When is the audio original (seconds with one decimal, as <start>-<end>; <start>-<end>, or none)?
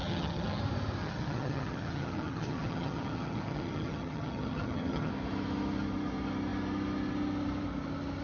0.6-1.0; 5.1-8.2